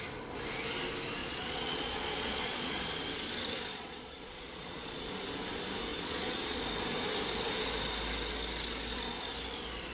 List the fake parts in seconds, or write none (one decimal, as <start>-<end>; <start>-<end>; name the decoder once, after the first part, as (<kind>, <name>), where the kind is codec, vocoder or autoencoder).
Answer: 1.2-2.9 (vocoder, Vocos); 3.7-5.1; 5.9-6.6